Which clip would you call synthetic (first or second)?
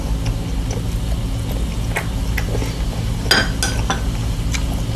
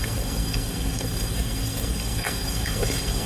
second